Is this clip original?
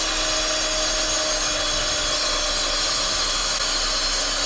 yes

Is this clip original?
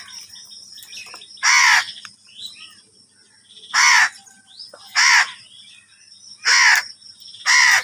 yes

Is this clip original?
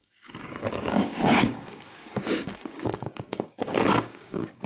no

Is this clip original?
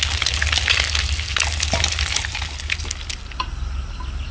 yes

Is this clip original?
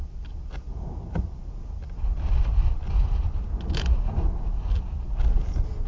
yes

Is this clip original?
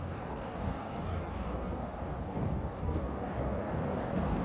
no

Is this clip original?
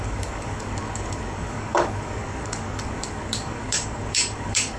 no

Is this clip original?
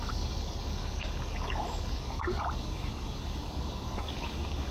no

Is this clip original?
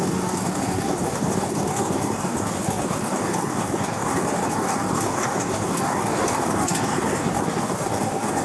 no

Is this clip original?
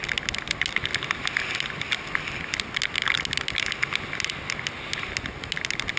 yes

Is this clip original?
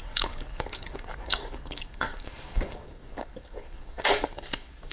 no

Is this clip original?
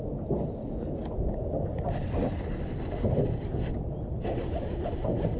yes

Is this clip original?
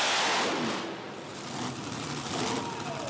yes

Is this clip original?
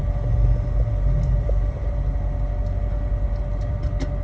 yes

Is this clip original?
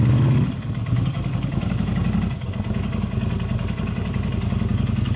no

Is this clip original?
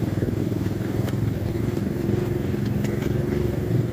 no